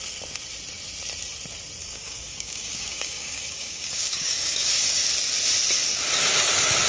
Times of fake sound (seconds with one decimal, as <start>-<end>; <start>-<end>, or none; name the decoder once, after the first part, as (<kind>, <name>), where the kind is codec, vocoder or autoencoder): 1.8-5.1 (codec, DAC)